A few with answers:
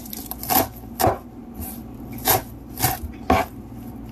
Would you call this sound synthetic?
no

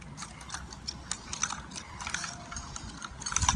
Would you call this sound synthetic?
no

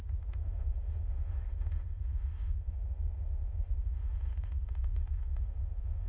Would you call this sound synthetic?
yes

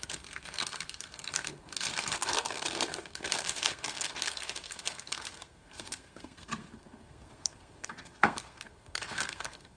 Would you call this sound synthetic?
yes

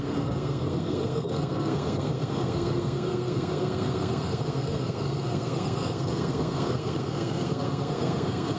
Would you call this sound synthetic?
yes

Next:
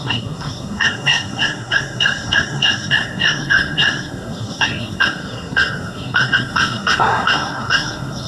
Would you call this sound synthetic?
yes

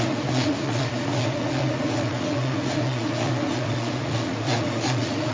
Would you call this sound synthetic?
yes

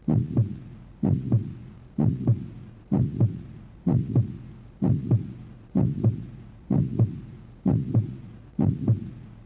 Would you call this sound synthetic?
yes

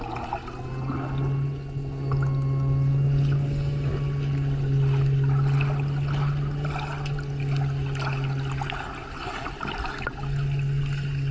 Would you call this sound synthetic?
no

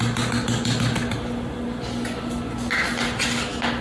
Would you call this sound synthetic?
no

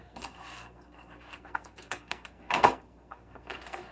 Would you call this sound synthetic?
yes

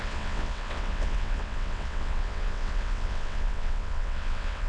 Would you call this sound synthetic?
yes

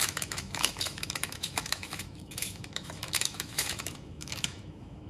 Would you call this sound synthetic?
yes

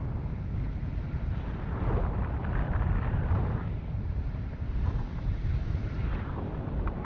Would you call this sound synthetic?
no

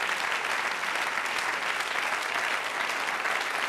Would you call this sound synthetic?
no